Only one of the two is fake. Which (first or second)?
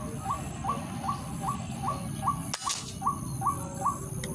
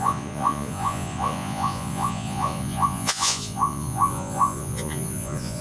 second